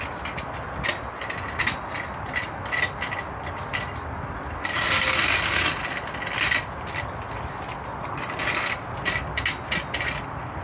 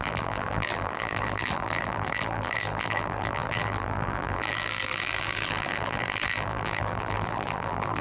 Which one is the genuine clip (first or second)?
first